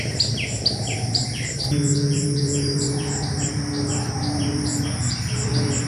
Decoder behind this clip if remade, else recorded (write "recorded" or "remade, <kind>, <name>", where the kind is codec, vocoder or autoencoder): remade, vocoder, BigVGAN v2